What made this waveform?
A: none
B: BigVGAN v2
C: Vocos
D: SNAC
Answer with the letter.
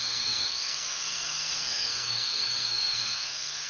D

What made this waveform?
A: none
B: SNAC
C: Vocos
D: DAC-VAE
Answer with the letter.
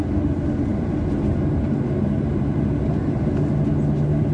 A